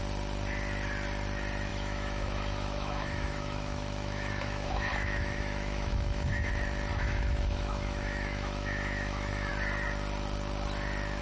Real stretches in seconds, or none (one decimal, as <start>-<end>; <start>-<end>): 0.0-1.7; 6.5-6.9; 9.5-11.2